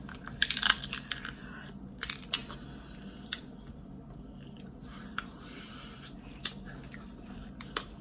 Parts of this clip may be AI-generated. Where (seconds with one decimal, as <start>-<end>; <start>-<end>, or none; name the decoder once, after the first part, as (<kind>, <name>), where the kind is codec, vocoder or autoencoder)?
none